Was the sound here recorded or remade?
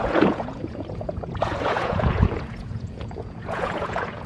remade